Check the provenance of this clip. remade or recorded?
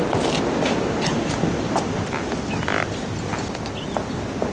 recorded